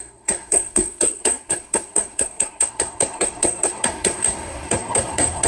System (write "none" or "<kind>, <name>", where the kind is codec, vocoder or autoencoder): codec, SNAC